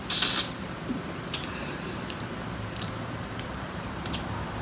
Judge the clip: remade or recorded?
remade